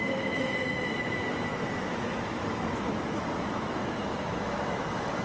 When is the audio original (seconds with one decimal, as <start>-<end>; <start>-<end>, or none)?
none